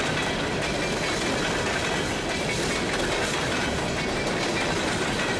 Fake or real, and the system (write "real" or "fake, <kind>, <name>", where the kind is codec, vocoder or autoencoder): real